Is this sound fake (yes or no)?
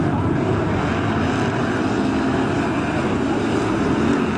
no